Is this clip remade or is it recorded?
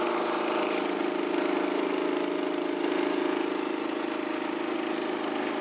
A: recorded